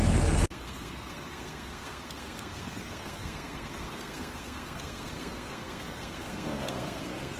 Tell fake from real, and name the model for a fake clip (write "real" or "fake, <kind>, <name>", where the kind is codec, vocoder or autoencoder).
fake, codec, SNAC